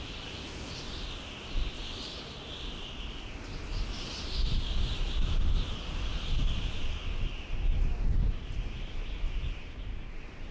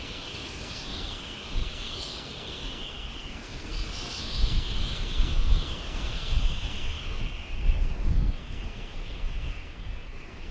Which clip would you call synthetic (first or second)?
second